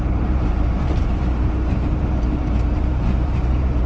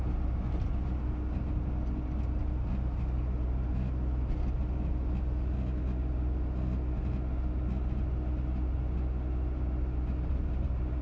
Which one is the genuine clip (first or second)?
second